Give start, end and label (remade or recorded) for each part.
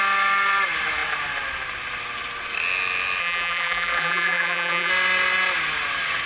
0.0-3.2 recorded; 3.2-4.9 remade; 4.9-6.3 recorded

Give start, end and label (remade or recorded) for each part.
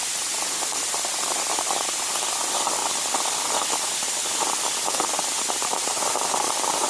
0.0-2.8 remade; 2.8-4.8 recorded; 4.8-6.9 remade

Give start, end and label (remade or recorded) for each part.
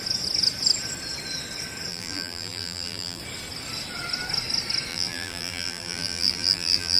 0.0-1.9 recorded; 1.9-3.2 remade; 3.2-4.9 recorded; 4.9-7.0 remade